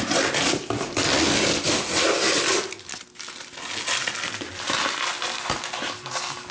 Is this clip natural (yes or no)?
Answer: yes